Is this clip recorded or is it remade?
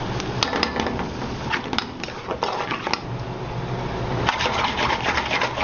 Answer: recorded